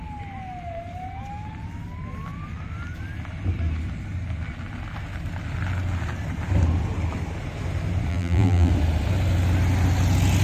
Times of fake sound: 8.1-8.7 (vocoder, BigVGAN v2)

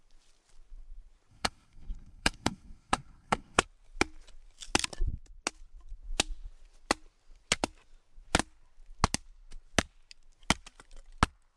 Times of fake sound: 1.3-3.6 (codec, SNAC)

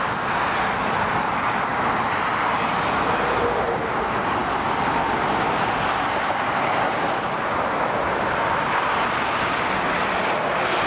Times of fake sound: none

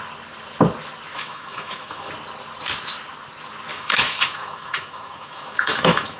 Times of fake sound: 1.1-2.1 (autoencoder, DAC-VAE); 3.7-6.2

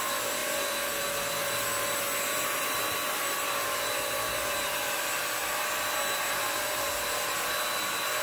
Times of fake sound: none

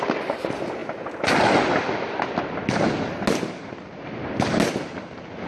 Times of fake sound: none